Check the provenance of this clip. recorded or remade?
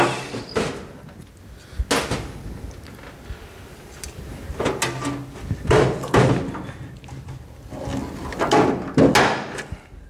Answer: recorded